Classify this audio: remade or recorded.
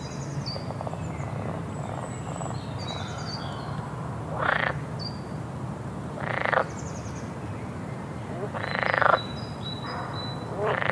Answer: recorded